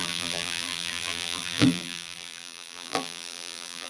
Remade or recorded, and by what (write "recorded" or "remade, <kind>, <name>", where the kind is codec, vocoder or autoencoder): remade, vocoder, BigVGAN v2